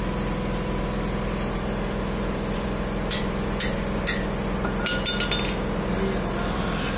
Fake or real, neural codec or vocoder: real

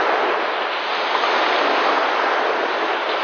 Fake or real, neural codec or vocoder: real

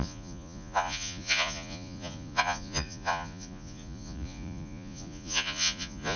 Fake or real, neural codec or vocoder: fake, vocoder, Vocos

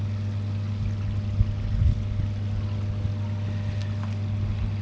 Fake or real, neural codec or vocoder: real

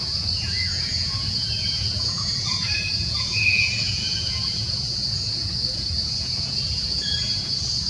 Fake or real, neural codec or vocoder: fake, vocoder, Vocos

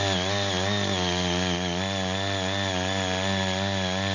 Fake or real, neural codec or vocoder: real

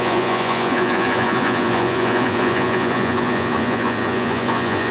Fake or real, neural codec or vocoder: fake, vocoder, Vocos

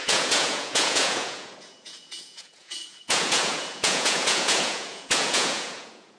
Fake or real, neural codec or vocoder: fake, vocoder, Vocos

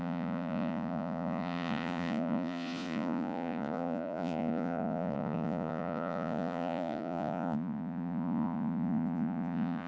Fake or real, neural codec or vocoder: fake, vocoder, Vocos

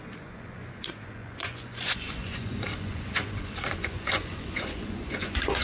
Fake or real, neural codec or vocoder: fake, vocoder, Vocos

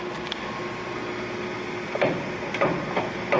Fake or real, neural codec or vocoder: real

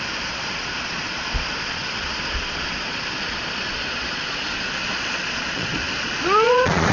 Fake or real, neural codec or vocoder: fake, vocoder, Vocos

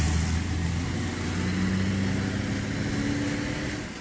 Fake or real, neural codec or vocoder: real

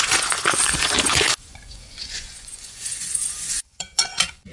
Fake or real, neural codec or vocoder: fake, vocoder, Vocos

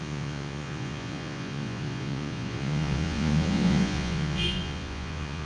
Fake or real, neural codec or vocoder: fake, vocoder, Vocos